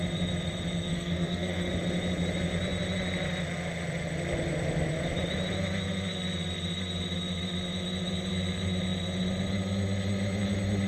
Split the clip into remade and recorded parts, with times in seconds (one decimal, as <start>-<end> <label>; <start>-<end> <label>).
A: 0.0-0.9 recorded; 0.9-1.7 remade; 1.7-10.9 recorded